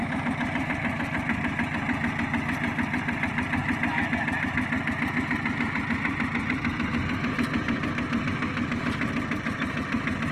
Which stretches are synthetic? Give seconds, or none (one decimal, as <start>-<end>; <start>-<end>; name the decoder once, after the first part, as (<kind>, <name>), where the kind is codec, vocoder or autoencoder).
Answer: none